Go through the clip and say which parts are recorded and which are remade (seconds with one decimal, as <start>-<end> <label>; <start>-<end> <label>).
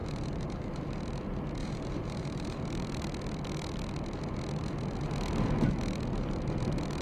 0.0-0.9 remade; 0.9-1.6 recorded; 1.6-2.7 remade; 2.7-7.0 recorded